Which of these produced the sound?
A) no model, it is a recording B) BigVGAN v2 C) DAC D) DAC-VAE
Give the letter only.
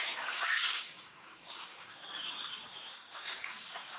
C